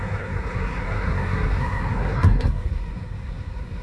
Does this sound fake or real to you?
fake